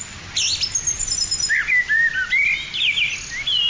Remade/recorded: recorded